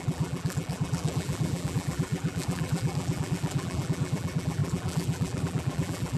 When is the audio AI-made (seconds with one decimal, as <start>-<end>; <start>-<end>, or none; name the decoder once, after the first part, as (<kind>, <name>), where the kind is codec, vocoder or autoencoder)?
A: 0.0-6.2 (vocoder, BigVGAN v2)